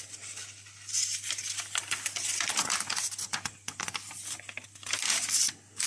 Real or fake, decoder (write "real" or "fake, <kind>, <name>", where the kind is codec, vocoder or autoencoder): real